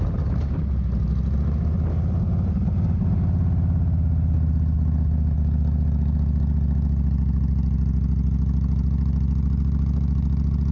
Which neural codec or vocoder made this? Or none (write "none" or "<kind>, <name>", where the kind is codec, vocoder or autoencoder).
none